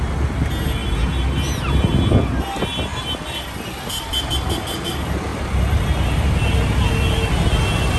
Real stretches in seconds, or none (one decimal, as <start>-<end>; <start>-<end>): 0.0-2.9; 4.3-5.3; 6.2-8.0